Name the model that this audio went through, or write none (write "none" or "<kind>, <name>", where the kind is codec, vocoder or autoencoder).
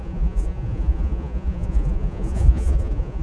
vocoder, Vocos